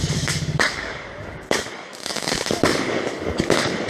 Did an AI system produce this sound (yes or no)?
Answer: yes